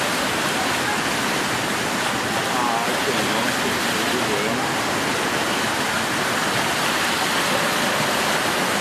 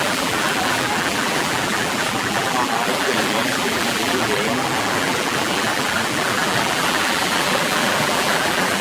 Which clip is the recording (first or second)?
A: first